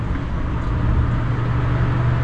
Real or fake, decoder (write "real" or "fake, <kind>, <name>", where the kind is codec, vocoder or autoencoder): real